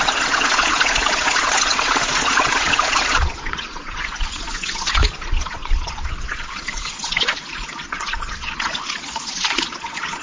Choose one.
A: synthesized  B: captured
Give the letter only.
A